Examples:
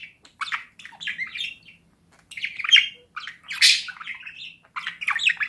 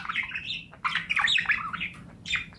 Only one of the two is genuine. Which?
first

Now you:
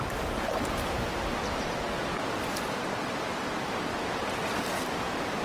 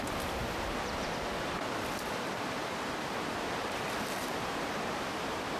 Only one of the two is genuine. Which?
first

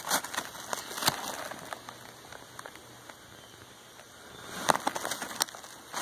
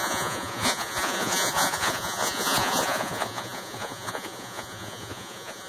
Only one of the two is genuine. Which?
first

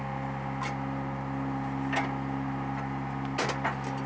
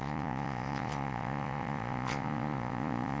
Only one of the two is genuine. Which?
first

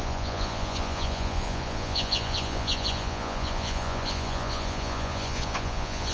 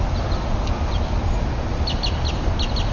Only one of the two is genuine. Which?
second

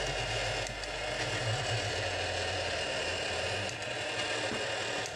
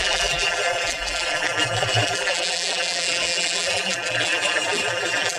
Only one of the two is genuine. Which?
first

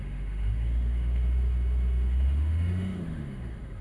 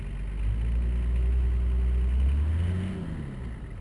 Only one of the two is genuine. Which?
second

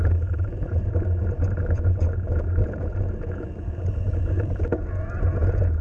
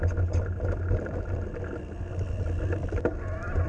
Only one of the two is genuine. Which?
second